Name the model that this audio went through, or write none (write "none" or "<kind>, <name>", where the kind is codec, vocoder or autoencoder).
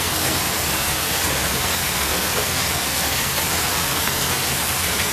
codec, SNAC